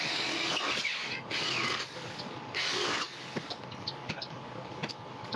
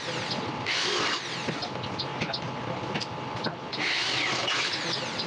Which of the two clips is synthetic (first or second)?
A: first